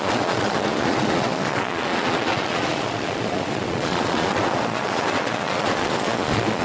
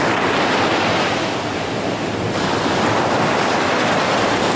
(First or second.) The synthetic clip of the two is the first